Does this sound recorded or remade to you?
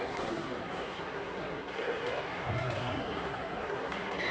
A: remade